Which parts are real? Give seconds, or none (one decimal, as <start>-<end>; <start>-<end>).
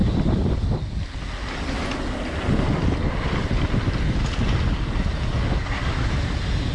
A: 0.0-6.7